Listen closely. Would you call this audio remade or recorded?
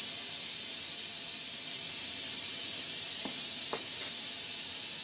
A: recorded